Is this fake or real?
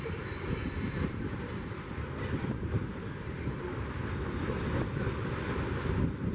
fake